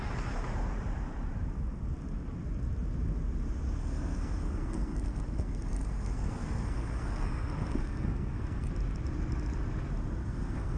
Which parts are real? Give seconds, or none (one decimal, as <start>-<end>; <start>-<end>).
0.0-3.8; 8.7-10.2